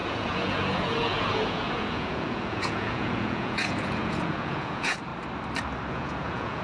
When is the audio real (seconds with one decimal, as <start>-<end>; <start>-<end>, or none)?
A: 5.1-5.9